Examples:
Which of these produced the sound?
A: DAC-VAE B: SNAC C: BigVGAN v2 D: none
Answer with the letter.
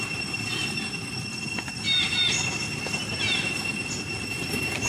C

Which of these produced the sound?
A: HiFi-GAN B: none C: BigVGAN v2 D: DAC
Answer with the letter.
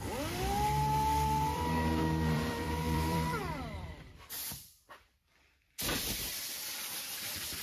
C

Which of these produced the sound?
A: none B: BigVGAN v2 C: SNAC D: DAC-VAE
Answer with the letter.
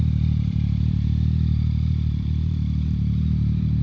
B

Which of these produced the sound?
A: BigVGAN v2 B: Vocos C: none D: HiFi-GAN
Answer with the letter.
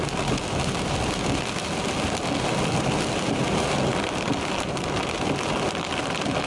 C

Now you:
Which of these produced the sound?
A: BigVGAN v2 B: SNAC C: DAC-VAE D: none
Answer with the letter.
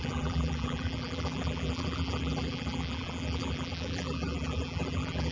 A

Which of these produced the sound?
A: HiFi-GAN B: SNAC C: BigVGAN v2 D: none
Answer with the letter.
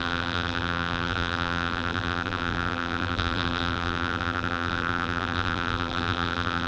C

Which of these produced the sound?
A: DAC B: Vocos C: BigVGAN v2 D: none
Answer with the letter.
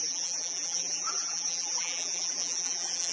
C